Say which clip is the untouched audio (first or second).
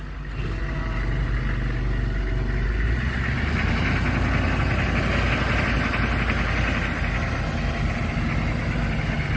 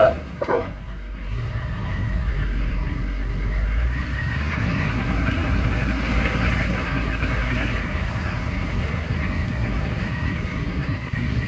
first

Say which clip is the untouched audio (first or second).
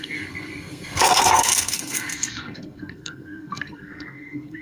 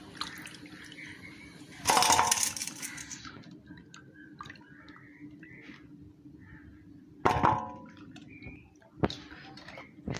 second